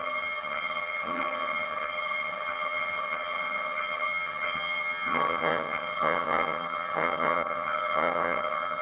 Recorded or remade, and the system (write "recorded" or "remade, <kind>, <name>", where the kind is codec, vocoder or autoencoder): remade, vocoder, HiFi-GAN